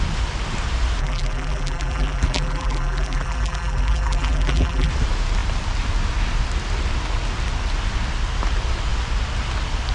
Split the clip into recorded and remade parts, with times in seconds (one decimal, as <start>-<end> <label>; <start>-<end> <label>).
0.0-1.0 recorded; 1.0-4.9 remade; 4.9-9.9 recorded